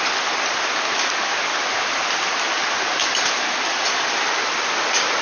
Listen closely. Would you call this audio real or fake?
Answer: real